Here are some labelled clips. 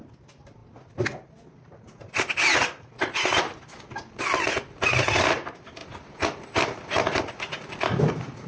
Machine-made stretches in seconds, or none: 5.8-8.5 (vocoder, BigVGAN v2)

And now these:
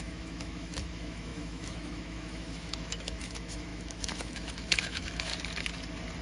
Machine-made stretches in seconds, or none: 0.0-5.3 (autoencoder, DAC-VAE)

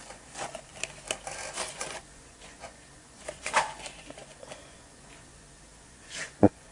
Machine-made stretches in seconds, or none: 0.0-0.7 (vocoder, Vocos); 1.7-6.7

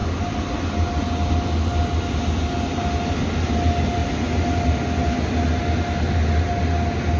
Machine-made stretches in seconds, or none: none

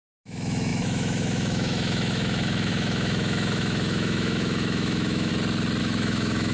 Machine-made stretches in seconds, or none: 0.0-5.3 (autoencoder, DAC-VAE); 5.8-6.5

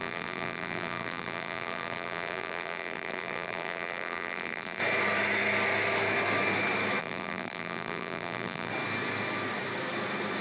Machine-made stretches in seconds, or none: 0.0-4.8 (vocoder, BigVGAN v2); 7.0-8.7

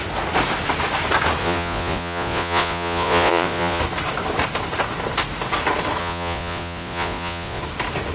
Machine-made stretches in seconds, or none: 1.4-3.8 (vocoder, Vocos); 6.0-7.6

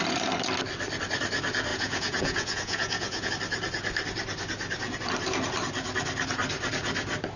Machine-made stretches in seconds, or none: 1.7-3.3 (vocoder, Vocos)